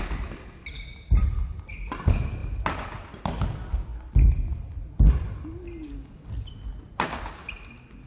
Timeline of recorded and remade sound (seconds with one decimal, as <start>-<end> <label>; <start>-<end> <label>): 0.0-8.1 recorded